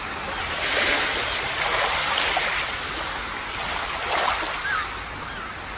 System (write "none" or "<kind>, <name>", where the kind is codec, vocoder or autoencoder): none